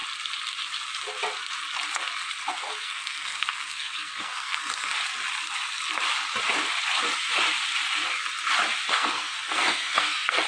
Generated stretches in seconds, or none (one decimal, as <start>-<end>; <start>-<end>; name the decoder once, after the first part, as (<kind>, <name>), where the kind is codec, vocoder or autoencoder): 2.5-5.0 (codec, SNAC); 8.9-10.5